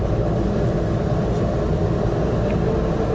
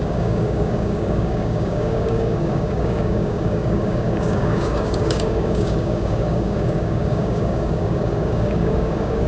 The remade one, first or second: second